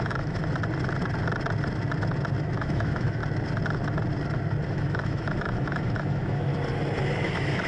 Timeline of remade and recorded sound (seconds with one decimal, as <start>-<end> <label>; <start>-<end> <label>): 0.0-0.4 remade; 0.4-2.4 recorded; 2.4-3.2 remade; 3.2-4.7 recorded; 4.7-6.5 remade; 6.5-7.2 recorded; 7.2-7.7 remade